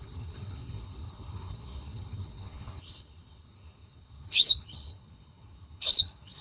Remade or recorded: remade